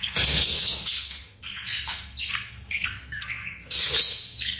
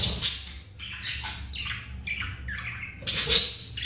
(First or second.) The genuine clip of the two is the second